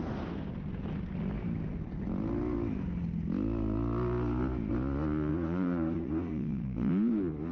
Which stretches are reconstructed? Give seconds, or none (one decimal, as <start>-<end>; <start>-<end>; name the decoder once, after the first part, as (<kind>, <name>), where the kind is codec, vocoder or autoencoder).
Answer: 5.3-6.9 (vocoder, Vocos)